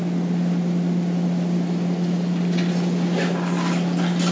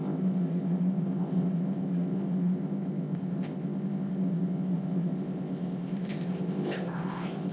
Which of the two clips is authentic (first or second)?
first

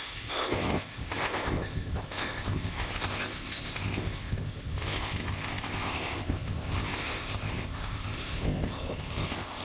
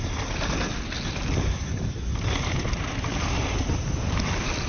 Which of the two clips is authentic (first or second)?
second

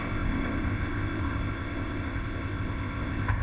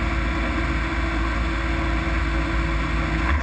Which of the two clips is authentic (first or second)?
second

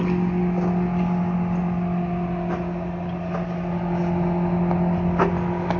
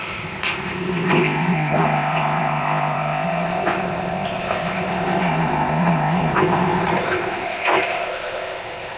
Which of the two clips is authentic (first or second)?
first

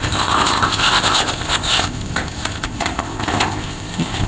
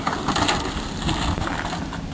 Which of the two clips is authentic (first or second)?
second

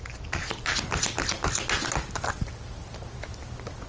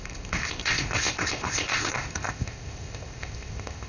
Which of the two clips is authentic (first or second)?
first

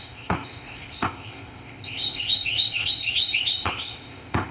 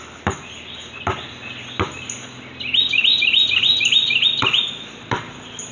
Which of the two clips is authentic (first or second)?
second